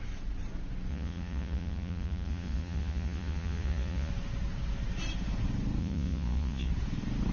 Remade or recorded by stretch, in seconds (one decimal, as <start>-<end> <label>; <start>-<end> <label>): 0.0-0.9 recorded; 0.9-4.1 remade; 4.1-5.8 recorded; 5.8-6.7 remade; 6.7-7.3 recorded